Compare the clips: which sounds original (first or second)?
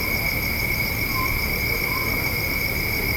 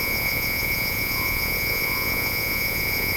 first